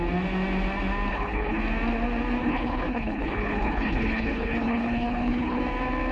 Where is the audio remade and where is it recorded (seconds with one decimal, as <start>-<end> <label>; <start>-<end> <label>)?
0.0-1.1 recorded; 1.1-1.6 remade; 1.6-2.4 recorded; 2.4-5.6 remade; 5.6-6.1 recorded